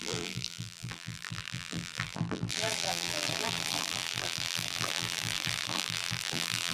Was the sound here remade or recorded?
remade